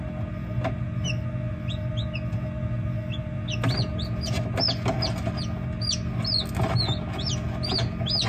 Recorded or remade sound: recorded